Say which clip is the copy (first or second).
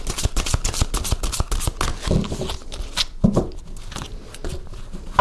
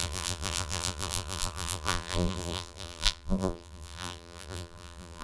second